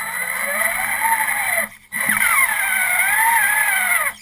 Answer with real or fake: real